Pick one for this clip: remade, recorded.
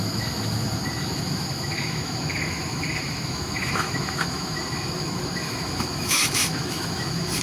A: remade